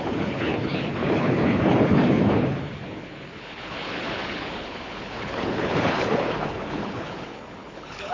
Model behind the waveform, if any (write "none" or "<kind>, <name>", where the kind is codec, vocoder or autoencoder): codec, HILCodec